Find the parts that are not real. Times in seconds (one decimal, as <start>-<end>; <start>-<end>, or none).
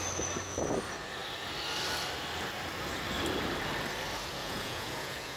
4.4-5.4